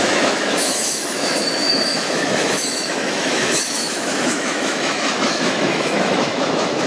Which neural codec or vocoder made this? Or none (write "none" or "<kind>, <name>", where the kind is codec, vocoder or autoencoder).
autoencoder, DAC-VAE